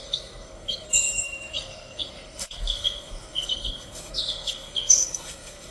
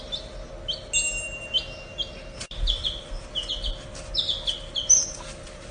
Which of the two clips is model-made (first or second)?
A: first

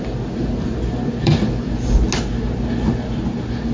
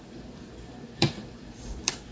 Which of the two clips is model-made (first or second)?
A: second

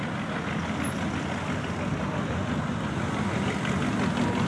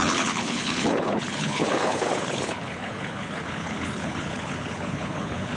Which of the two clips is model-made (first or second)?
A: second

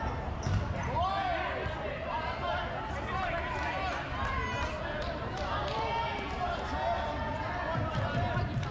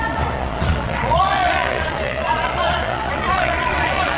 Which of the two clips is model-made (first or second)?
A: second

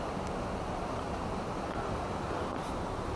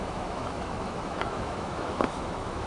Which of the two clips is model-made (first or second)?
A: second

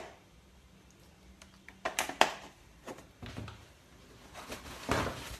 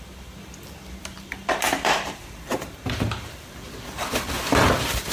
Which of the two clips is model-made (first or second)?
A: second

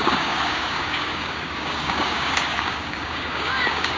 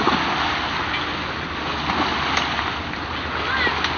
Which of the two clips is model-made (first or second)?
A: first